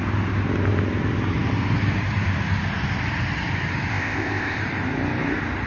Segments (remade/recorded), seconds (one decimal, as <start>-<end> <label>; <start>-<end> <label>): 0.0-3.9 recorded; 3.9-4.6 remade; 4.6-5.7 recorded

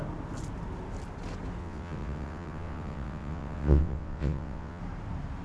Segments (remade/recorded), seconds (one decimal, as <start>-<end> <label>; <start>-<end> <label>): 0.0-1.6 recorded; 1.6-4.8 remade; 4.8-5.4 recorded

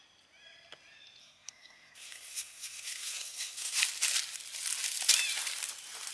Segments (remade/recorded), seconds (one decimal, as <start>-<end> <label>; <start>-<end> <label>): 0.0-1.2 recorded; 1.2-3.8 remade; 3.8-6.1 recorded